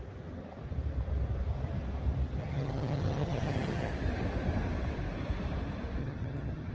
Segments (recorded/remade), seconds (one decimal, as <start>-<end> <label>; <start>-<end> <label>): 0.0-2.4 recorded; 2.4-3.9 remade; 3.9-6.0 recorded; 6.0-6.7 remade